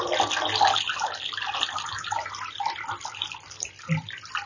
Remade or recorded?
recorded